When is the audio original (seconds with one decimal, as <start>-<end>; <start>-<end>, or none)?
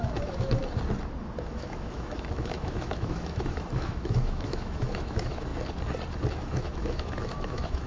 0.6-1.4; 5.5-6.3